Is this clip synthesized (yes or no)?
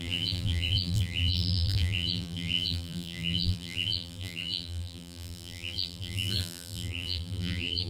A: yes